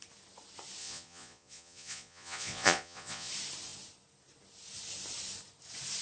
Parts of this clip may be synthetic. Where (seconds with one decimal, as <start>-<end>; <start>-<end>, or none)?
0.8-3.3

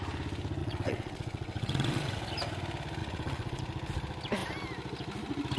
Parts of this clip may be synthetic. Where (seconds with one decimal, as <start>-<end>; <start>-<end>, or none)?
0.6-2.2; 3.0-3.6